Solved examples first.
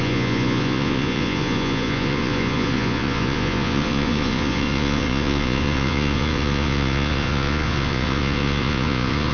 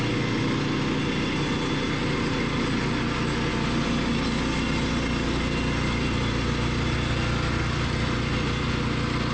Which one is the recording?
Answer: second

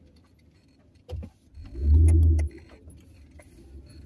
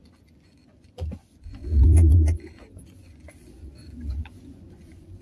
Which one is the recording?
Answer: first